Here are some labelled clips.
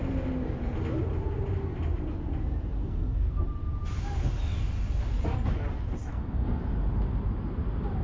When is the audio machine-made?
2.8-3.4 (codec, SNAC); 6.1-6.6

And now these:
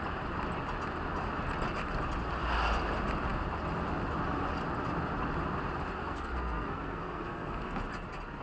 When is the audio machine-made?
6.0-7.8 (codec, SNAC)